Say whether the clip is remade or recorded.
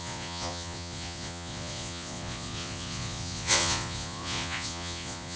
remade